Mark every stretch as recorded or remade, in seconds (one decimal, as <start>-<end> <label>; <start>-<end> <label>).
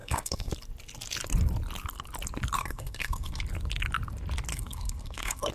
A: 0.0-0.5 remade; 0.5-2.6 recorded; 2.6-3.4 remade; 3.4-4.5 recorded; 4.5-5.5 remade